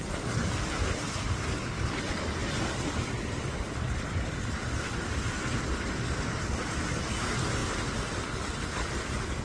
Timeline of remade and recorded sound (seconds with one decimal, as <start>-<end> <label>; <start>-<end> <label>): 0.0-9.4 recorded